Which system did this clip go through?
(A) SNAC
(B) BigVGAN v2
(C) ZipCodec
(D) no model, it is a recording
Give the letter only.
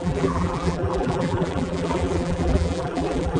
B